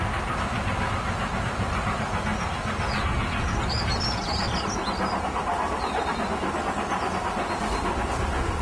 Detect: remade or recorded recorded